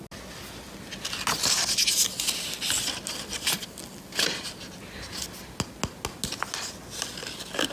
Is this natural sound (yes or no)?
yes